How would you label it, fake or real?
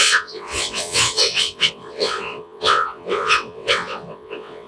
fake